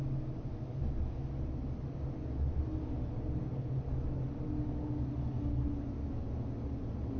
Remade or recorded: recorded